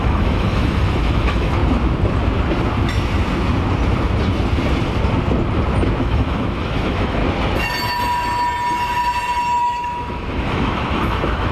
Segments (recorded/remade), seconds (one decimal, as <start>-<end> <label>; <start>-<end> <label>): 0.0-1.6 remade; 1.6-6.0 recorded; 6.0-7.2 remade; 7.2-9.6 recorded; 9.6-11.5 remade